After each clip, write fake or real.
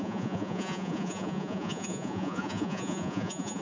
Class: fake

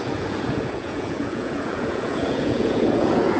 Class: fake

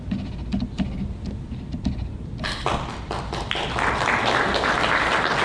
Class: real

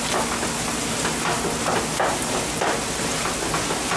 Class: real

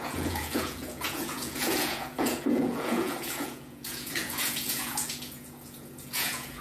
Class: fake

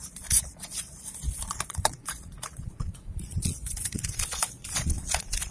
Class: fake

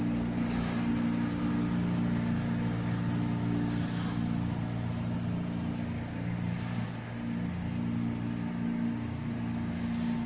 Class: real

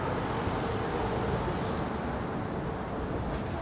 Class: real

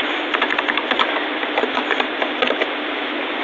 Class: real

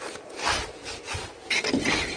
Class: real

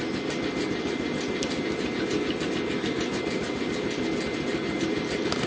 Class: real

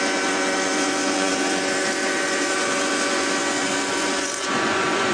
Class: fake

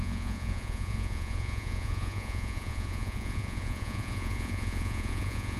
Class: fake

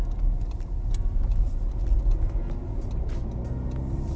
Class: real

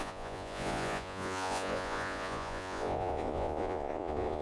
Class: fake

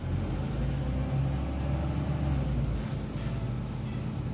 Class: real